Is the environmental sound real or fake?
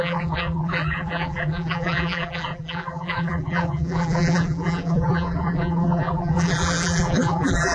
fake